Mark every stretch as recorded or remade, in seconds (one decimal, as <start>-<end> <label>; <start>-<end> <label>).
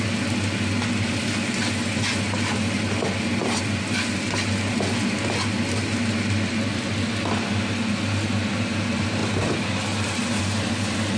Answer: 0.0-11.2 recorded